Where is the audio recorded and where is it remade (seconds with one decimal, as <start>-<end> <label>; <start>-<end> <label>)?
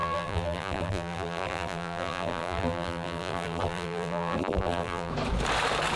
0.0-5.1 remade; 5.1-6.0 recorded